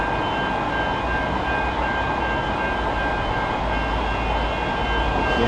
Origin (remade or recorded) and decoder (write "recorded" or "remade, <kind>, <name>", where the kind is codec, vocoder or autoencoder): recorded